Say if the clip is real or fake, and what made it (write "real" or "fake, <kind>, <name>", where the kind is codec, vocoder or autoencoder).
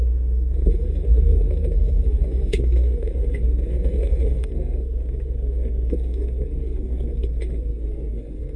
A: fake, codec, SNAC